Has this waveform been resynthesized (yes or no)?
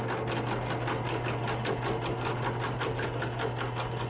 no